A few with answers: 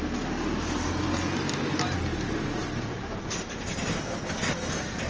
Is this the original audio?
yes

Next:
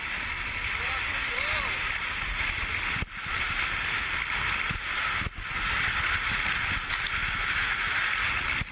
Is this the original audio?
yes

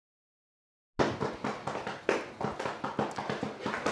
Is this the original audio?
yes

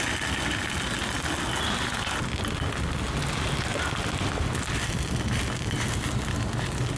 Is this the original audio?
yes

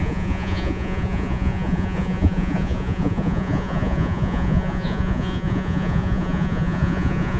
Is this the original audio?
no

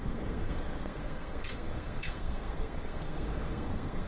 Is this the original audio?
no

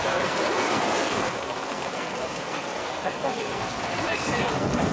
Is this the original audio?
no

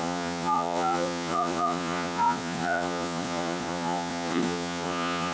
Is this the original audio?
no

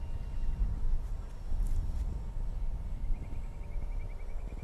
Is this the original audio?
yes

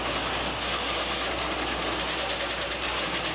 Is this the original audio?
yes